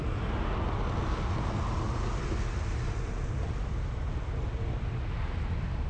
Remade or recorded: recorded